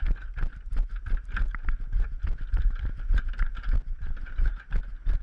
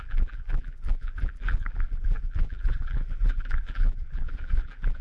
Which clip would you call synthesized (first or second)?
second